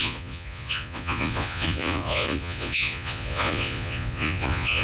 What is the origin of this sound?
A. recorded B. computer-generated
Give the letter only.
B